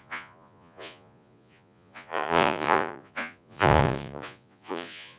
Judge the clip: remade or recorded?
remade